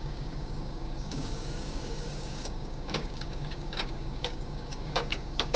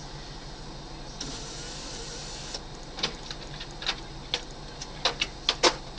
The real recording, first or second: second